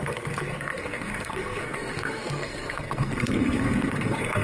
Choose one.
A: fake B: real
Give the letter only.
A